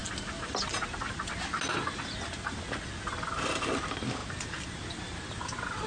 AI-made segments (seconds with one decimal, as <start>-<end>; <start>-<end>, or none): none